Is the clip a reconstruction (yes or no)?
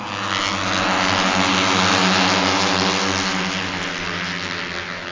no